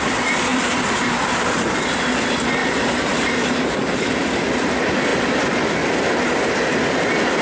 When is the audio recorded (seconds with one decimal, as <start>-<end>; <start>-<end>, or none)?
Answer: 0.0-0.5; 1.9-2.6; 4.2-7.4